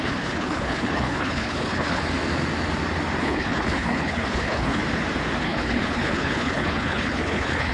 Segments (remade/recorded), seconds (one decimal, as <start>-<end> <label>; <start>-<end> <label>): 0.0-2.0 remade; 2.0-3.2 recorded; 3.2-4.8 remade; 4.8-5.4 recorded; 5.4-7.7 remade